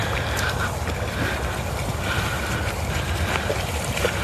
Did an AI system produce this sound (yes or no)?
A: no